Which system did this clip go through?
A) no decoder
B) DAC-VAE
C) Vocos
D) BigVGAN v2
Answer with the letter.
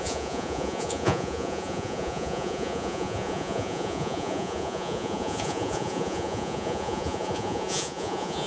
C